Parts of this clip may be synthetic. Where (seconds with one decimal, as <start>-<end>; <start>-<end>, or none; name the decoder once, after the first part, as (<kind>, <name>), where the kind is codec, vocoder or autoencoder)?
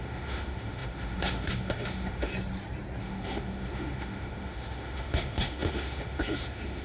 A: 0.0-2.3 (autoencoder, DAC-VAE); 3.0-6.8